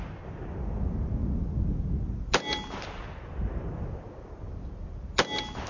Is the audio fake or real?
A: real